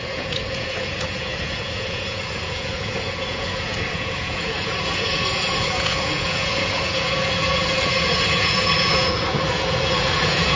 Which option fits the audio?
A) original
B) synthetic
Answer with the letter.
B